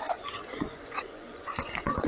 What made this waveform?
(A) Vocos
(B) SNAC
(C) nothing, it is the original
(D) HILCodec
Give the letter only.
A